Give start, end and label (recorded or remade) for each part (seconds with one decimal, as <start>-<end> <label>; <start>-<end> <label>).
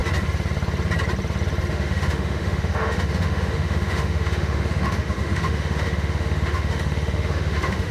0.0-1.7 recorded; 1.7-7.9 remade